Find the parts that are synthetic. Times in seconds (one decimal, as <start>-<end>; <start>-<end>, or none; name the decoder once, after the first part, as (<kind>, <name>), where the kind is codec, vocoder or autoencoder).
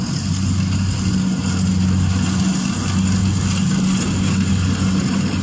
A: none